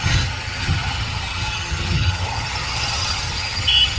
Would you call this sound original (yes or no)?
no